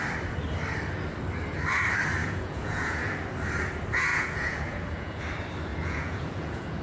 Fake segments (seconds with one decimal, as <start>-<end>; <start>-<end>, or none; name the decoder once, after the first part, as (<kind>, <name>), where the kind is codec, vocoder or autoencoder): 2.2-3.1 (vocoder, Vocos); 4.1-5.2; 5.7-6.8